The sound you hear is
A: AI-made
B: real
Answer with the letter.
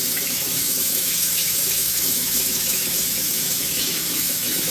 A